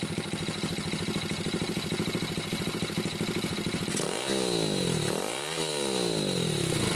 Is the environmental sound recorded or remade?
recorded